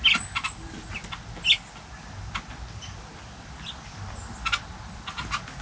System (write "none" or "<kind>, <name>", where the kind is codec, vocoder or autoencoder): none